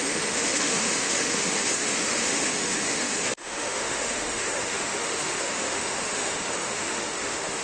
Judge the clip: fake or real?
fake